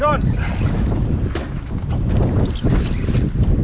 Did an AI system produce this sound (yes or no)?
no